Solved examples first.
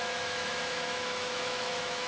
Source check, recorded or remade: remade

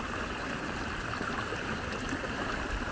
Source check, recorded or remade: recorded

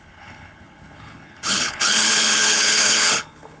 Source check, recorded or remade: remade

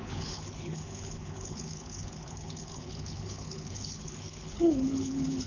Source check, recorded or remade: remade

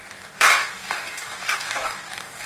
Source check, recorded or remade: remade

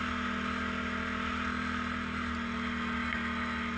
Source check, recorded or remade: recorded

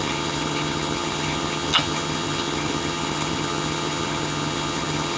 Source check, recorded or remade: remade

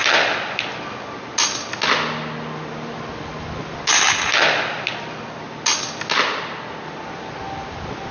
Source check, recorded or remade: recorded